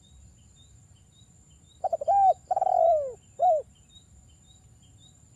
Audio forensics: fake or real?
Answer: real